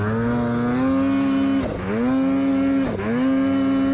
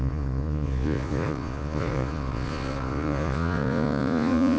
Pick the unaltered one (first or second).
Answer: first